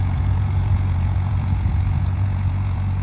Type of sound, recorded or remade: remade